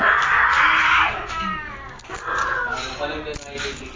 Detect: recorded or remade recorded